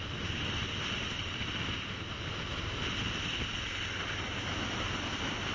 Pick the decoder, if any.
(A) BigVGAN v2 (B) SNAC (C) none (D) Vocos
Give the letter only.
A